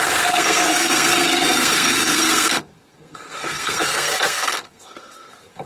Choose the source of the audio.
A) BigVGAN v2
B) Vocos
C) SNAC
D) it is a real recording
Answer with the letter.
C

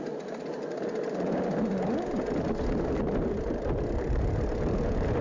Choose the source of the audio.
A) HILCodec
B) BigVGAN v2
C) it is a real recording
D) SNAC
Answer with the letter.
C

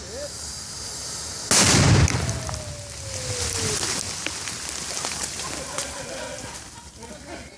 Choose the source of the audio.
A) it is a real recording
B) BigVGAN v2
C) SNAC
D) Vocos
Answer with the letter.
A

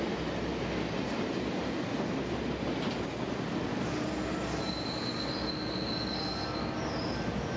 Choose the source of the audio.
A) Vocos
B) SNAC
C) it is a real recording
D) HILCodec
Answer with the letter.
C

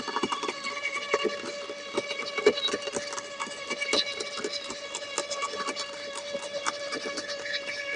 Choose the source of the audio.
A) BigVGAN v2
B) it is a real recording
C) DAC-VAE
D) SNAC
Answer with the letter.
B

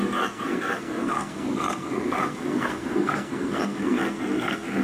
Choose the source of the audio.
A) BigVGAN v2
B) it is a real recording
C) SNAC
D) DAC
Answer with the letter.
C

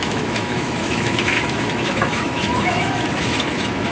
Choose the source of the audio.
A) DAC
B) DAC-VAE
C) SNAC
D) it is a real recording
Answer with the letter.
B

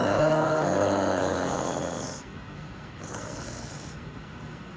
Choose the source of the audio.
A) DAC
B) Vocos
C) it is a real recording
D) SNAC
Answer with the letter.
D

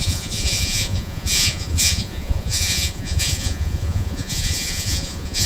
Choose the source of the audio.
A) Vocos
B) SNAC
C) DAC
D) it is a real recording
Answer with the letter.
A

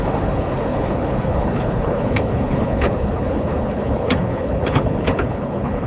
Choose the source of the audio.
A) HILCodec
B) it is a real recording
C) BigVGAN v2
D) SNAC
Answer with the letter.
A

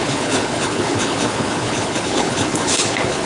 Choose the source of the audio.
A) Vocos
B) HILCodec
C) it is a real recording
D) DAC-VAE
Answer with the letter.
B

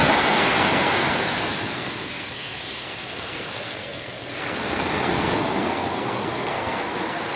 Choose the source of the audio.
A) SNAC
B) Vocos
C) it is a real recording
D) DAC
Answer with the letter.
A